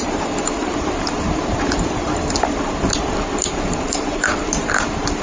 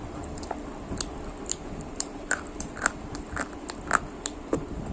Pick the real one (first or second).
second